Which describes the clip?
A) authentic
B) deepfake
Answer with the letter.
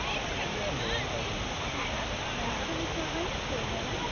A